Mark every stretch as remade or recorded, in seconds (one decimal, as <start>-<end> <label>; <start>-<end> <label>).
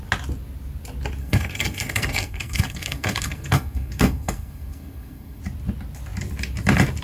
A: 0.0-1.2 recorded; 1.2-5.4 remade; 5.4-7.0 recorded